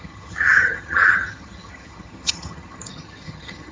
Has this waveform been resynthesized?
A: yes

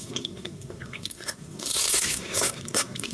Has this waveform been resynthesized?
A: yes